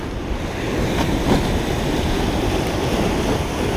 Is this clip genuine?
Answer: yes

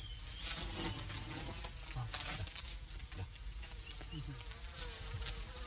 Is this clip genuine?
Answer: yes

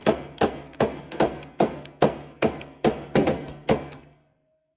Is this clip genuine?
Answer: no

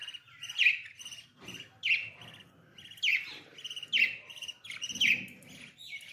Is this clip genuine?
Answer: yes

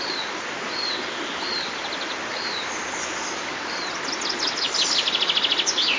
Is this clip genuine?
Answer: yes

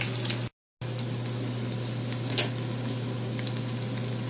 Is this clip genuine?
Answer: yes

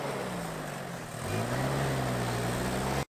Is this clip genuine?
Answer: yes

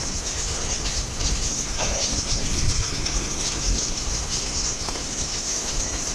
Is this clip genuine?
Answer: no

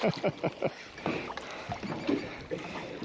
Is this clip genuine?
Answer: yes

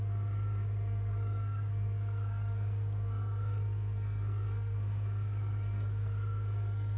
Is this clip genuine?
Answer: no